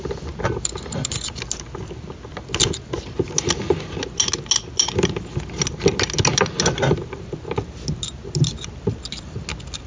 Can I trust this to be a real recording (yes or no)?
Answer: yes